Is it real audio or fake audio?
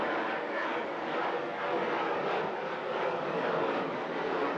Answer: fake